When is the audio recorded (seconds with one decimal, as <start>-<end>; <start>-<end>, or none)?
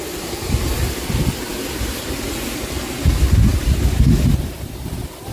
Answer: 0.0-5.3